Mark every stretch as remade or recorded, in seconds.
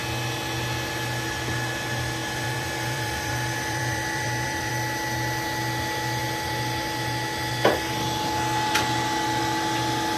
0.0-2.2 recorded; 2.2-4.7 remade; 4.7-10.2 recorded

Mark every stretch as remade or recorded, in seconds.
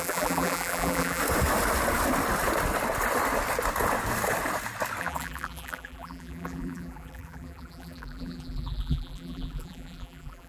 0.0-1.2 remade; 1.2-5.0 recorded; 5.0-10.5 remade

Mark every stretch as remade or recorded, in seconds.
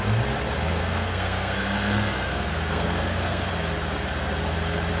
0.0-0.8 recorded; 0.8-3.5 remade; 3.5-5.0 recorded